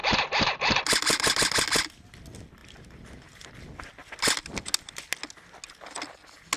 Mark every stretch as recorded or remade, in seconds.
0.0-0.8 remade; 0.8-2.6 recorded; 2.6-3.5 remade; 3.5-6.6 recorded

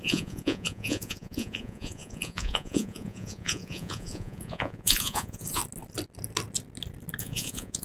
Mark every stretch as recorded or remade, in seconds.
0.0-5.6 remade; 5.6-7.2 recorded; 7.2-7.8 remade

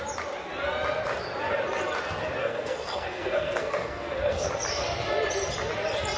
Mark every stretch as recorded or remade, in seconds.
0.0-2.4 recorded; 2.4-4.5 remade; 4.5-6.2 recorded

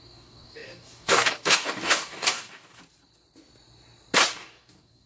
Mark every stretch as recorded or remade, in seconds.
0.0-2.8 remade; 2.8-4.3 recorded; 4.3-5.1 remade

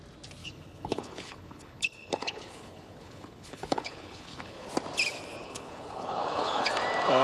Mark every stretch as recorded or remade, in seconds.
0.0-0.4 recorded; 0.4-4.7 remade; 4.7-5.4 recorded; 5.4-6.7 remade; 6.7-7.2 recorded

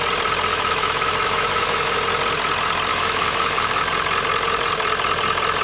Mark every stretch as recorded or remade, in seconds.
0.0-0.5 recorded; 0.5-2.0 remade; 2.0-2.9 recorded; 2.9-3.8 remade; 3.8-5.6 recorded

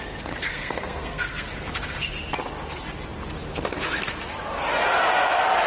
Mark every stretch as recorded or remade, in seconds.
0.0-0.5 recorded; 0.5-1.5 remade; 1.5-5.7 recorded

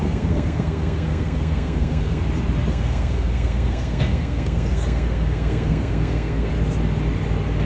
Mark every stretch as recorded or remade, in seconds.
0.0-2.2 remade; 2.2-2.7 recorded; 2.7-6.5 remade; 6.5-7.7 recorded